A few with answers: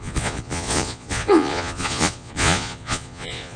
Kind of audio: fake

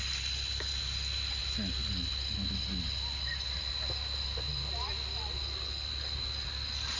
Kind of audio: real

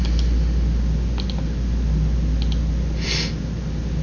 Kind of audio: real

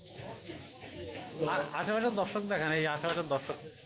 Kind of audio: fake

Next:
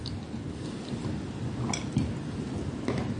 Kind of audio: real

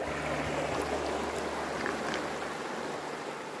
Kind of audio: real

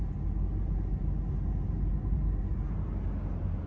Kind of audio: real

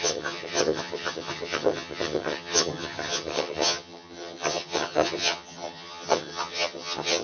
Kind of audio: fake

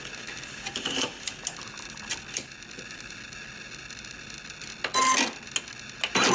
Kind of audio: real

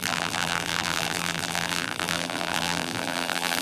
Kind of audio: fake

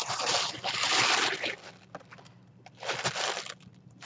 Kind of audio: real